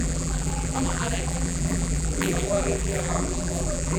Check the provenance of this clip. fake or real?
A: fake